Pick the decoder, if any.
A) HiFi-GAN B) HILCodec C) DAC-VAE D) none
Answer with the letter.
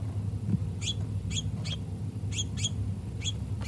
D